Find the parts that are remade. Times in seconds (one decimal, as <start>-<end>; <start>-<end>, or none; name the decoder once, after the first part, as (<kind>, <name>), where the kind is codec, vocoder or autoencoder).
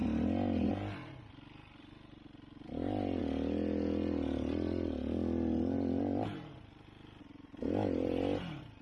none